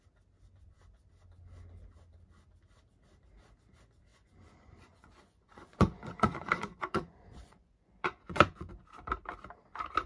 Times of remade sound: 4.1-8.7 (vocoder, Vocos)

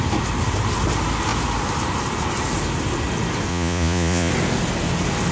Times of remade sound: 3.5-4.3 (vocoder, Vocos)

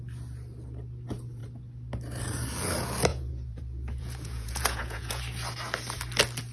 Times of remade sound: 3.1-5.2 (vocoder, Vocos)

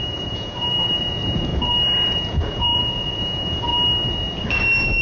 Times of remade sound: 0.0-1.5 (vocoder, Vocos); 2.1-3.7

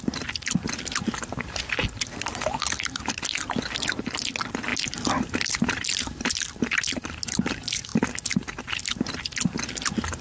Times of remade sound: none

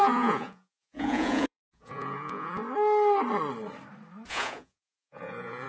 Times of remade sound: 0.0-2.6 (vocoder, Vocos); 4.3-5.7